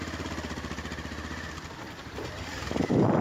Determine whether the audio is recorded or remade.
remade